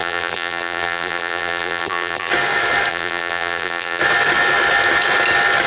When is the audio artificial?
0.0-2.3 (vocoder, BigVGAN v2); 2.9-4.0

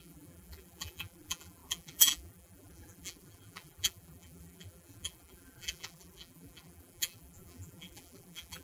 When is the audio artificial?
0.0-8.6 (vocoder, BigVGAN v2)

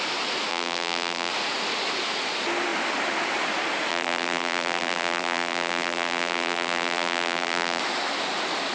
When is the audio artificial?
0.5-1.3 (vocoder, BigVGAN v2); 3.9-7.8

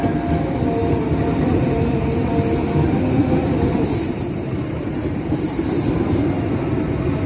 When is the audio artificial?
0.8-2.3 (vocoder, BigVGAN v2); 3.4-5.6

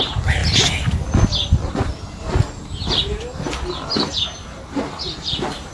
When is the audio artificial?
none

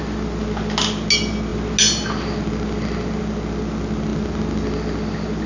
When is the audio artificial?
none

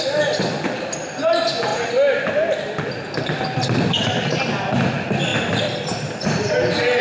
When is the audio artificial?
5.3-6.5 (vocoder, BigVGAN v2)

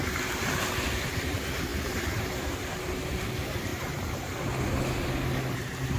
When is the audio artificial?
3.7-4.3 (vocoder, BigVGAN v2)